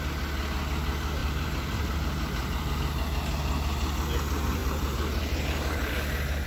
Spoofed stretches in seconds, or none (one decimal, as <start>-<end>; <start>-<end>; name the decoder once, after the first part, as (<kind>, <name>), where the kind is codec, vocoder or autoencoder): 1.2-2.8 (vocoder, BigVGAN v2); 4.6-5.9